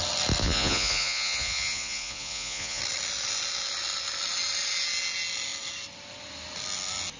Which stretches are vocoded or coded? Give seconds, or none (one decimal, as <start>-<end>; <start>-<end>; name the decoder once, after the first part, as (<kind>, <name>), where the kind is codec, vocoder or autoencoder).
0.4-2.8 (vocoder, Vocos)